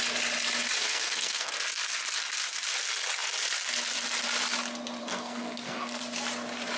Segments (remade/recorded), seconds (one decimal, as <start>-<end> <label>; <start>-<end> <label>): 0.0-0.8 recorded; 0.8-1.5 remade; 1.5-5.0 recorded; 5.0-6.0 remade; 6.0-6.8 recorded